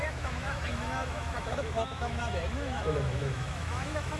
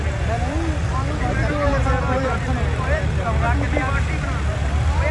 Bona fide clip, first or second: second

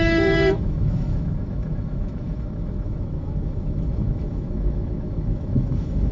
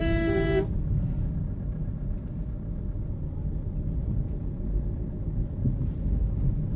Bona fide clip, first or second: second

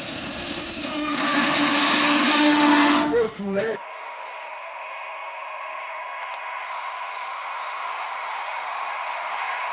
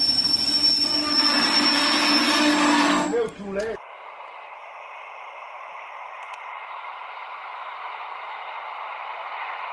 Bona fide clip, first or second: second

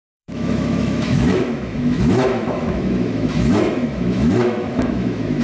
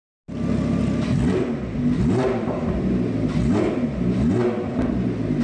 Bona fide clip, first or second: second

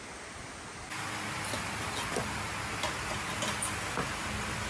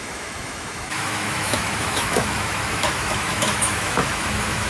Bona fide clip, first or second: first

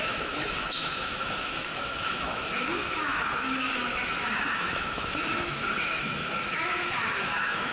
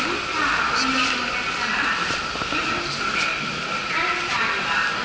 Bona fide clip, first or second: second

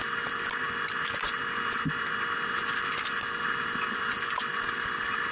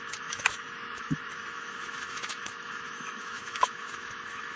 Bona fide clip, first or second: first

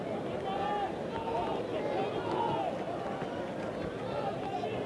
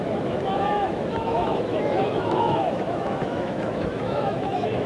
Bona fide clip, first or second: first